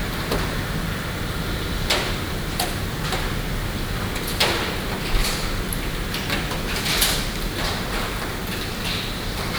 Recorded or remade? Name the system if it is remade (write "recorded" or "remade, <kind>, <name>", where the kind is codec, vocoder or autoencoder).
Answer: recorded